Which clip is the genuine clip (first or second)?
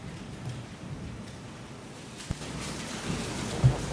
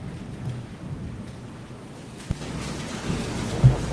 second